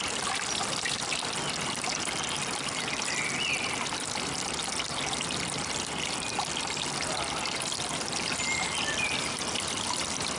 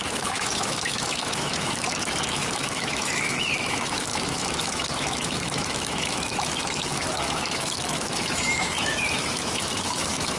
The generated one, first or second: second